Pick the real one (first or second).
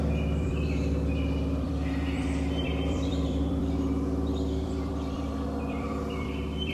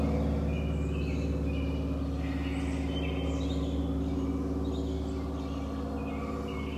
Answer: second